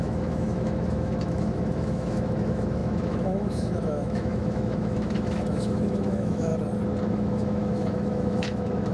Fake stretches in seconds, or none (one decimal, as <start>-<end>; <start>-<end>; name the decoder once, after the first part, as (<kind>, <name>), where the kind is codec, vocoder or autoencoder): 0.0-6.5 (autoencoder, DAC-VAE); 7.1-8.9